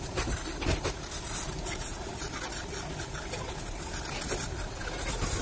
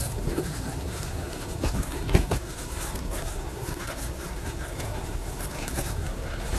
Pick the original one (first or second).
first